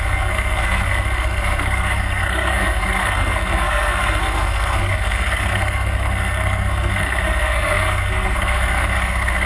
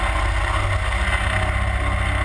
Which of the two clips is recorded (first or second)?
second